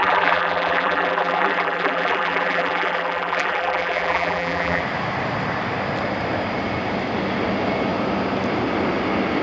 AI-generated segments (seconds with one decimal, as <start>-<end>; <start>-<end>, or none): 0.0-4.8

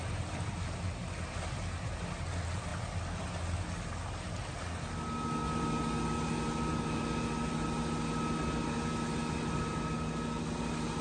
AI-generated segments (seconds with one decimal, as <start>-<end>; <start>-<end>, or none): none

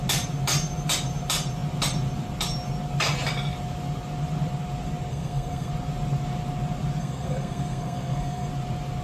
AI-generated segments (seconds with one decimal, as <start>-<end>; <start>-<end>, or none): 5.1-5.7; 7.0-8.5

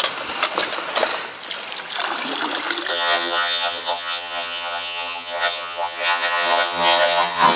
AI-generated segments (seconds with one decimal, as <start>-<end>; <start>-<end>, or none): 2.9-7.6

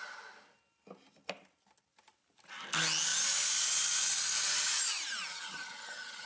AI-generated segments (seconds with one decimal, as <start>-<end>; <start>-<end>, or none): 5.3-6.3

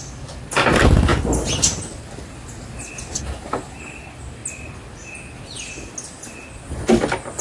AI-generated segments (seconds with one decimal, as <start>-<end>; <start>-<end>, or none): none

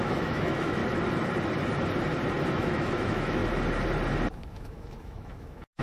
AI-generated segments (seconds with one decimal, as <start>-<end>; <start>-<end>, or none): 0.0-0.8; 2.5-3.4; 4.3-5.8

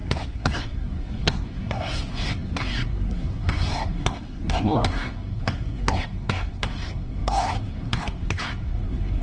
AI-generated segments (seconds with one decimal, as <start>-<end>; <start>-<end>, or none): 0.0-9.2